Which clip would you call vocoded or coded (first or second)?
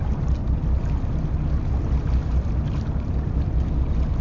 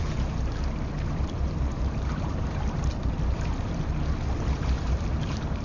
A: second